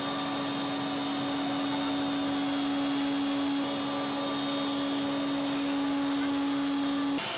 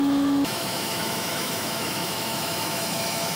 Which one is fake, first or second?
second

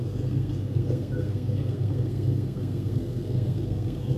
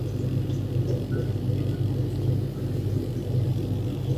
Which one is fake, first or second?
first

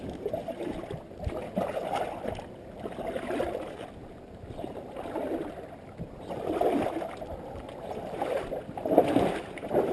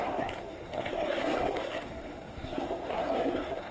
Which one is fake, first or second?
second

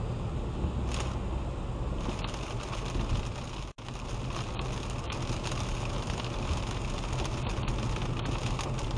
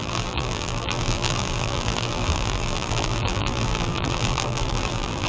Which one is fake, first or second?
second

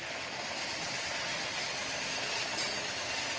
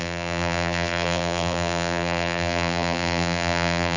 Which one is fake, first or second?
second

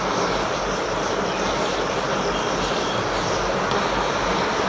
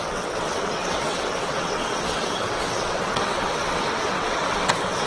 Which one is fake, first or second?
second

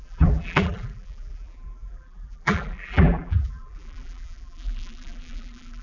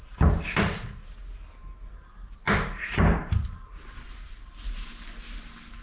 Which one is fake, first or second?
first